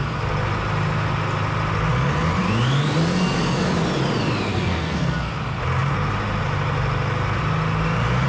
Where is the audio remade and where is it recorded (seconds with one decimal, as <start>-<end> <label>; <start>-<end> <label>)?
0.0-4.5 recorded; 4.5-5.3 remade; 5.3-8.3 recorded

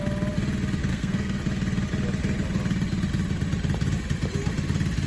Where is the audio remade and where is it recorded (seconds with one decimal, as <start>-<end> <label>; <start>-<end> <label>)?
0.0-0.9 recorded; 0.9-1.4 remade; 1.4-5.1 recorded

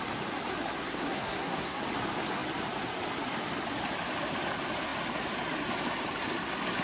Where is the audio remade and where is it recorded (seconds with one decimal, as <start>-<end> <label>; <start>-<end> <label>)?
0.0-0.8 recorded; 0.8-1.8 remade; 1.8-6.8 recorded